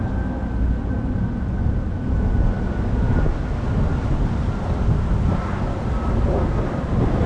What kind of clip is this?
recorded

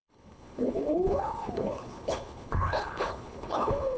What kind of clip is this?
remade